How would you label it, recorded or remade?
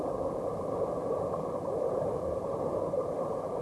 recorded